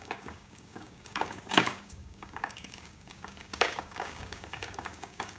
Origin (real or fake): fake